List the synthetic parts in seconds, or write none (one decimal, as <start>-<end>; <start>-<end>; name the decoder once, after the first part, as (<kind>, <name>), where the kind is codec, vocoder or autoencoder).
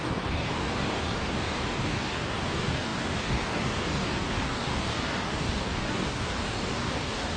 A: 0.0-7.4 (codec, DAC)